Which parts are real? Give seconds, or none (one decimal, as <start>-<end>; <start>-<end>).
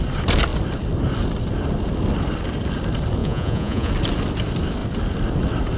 0.0-3.2; 3.9-5.8